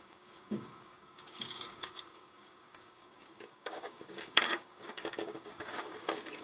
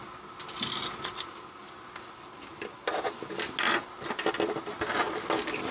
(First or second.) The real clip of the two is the second